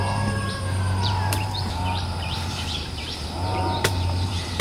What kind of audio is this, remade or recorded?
remade